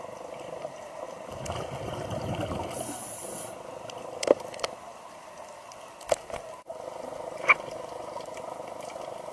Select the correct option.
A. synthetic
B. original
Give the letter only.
B